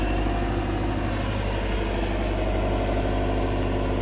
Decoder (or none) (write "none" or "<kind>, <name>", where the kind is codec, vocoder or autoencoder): none